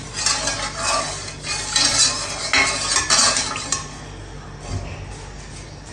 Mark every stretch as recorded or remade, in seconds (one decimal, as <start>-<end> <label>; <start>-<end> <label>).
0.0-5.9 recorded